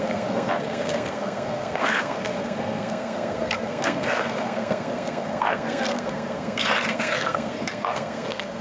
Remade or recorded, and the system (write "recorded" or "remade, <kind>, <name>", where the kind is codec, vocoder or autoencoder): remade, codec, SNAC